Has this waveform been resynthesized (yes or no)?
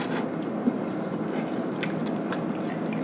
no